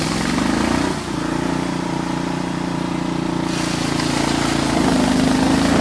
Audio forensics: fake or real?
real